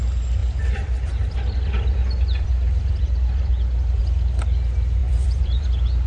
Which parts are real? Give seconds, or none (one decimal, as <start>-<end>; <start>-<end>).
0.0-0.4; 4.0-5.0